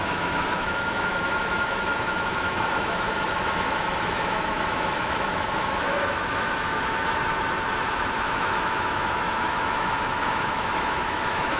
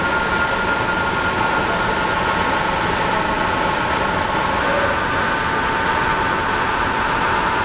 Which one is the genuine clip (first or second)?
second